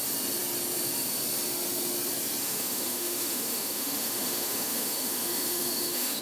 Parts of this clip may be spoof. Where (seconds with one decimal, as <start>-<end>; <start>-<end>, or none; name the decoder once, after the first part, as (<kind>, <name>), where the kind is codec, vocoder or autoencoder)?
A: 2.4-6.2 (autoencoder, DAC-VAE)